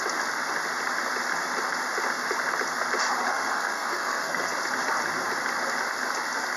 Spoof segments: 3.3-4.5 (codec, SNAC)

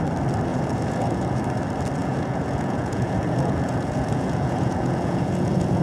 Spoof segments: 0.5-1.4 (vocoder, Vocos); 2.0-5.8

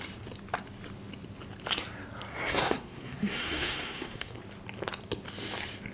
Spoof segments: 2.3-4.4 (codec, SNAC)